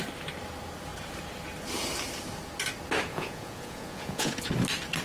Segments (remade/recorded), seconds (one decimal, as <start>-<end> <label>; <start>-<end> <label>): 0.0-3.1 recorded; 3.1-4.5 remade; 4.5-5.0 recorded